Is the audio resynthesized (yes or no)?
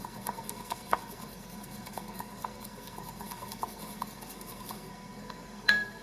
yes